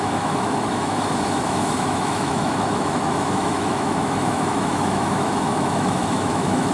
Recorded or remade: remade